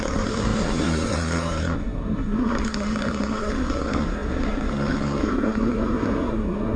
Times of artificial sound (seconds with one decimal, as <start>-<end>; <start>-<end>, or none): 0.0-6.8